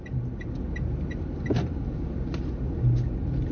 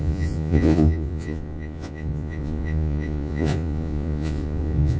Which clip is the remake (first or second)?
second